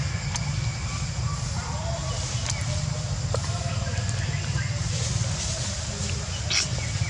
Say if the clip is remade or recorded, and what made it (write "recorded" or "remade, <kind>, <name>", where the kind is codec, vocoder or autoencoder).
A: recorded